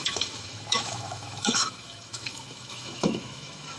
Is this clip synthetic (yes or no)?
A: yes